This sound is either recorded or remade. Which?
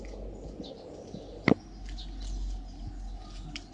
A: recorded